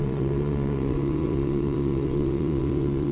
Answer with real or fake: fake